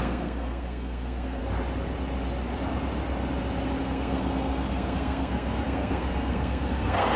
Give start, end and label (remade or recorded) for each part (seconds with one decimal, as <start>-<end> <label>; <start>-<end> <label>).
0.0-1.4 remade; 1.4-3.8 recorded; 3.8-7.2 remade